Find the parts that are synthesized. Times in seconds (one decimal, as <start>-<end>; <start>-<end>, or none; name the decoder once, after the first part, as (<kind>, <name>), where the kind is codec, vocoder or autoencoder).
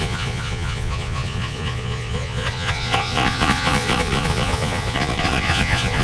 0.0-6.0 (vocoder, Vocos)